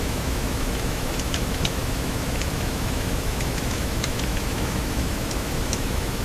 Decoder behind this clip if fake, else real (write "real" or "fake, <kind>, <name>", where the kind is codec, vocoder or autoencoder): fake, autoencoder, DAC-VAE